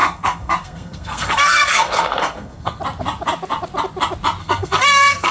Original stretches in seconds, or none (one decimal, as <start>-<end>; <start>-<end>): 2.8-4.4